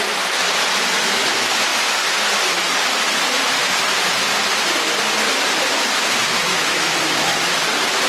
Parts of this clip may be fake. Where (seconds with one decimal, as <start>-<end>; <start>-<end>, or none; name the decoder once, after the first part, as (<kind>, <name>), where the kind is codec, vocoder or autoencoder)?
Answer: 6.5-7.3 (autoencoder, DAC-VAE)